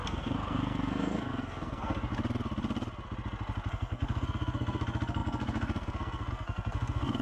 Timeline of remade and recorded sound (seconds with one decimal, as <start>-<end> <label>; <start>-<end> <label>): 0.0-2.1 remade; 2.1-3.7 recorded; 3.7-7.2 remade